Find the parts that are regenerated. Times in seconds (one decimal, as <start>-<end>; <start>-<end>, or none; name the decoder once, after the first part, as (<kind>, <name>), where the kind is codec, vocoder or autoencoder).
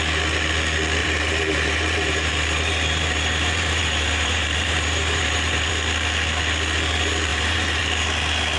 1.0-5.7 (vocoder, BigVGAN v2); 7.3-7.8